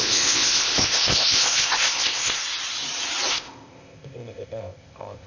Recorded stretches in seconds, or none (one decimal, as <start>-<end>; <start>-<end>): 2.4-3.3